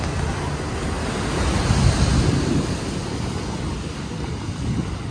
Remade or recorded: recorded